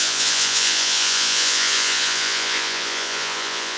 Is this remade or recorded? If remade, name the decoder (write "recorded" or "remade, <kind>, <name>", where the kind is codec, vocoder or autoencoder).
remade, vocoder, Vocos